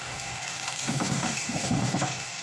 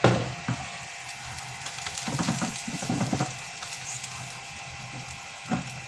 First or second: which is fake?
first